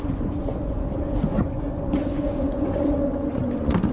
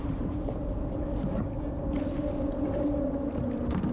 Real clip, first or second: second